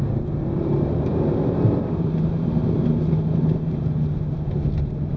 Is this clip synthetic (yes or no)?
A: yes